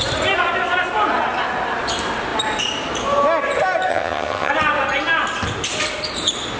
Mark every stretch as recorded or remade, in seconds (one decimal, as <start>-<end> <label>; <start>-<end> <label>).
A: 0.0-3.9 recorded; 3.9-4.5 remade; 4.5-6.6 recorded